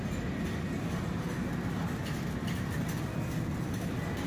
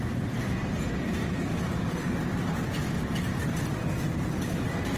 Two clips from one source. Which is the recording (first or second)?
first